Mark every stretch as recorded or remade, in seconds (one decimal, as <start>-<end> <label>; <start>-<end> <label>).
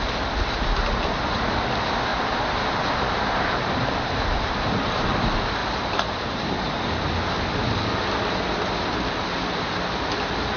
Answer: 0.0-2.1 recorded; 2.1-5.1 remade; 5.1-5.6 recorded; 5.6-6.8 remade; 6.8-10.6 recorded